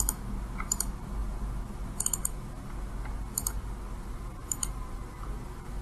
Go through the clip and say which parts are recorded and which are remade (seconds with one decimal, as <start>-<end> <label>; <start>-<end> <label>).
0.0-5.8 recorded